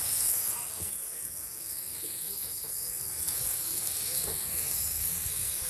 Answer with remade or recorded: remade